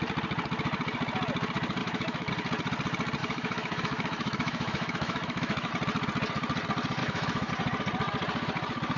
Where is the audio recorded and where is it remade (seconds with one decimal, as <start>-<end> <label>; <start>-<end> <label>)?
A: 0.0-1.8 recorded; 1.8-2.3 remade; 2.3-3.2 recorded; 3.2-5.7 remade; 5.7-7.0 recorded; 7.0-7.5 remade; 7.5-9.0 recorded